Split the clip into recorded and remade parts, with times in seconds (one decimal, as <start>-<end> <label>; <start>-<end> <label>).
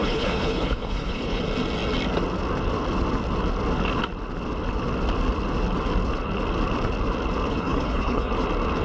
0.0-1.4 remade; 1.4-7.5 recorded; 7.5-8.3 remade; 8.3-8.8 recorded